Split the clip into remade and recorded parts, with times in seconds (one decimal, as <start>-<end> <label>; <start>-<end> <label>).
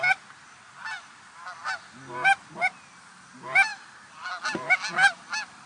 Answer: 0.0-5.7 recorded